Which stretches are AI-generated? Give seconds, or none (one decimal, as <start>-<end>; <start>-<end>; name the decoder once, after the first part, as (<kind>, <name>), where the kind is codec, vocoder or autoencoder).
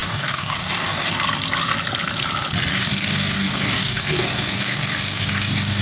0.0-1.1 (codec, DAC); 2.7-5.8